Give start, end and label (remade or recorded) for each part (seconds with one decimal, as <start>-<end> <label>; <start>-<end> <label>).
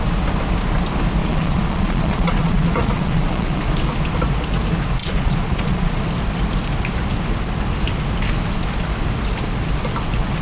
0.0-1.2 recorded; 1.2-3.6 remade; 3.6-5.0 recorded; 5.0-6.0 remade; 6.0-10.4 recorded